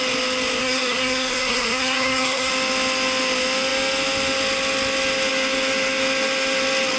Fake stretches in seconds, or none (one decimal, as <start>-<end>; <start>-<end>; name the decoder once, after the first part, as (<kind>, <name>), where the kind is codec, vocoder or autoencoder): 0.6-2.5 (codec, SNAC)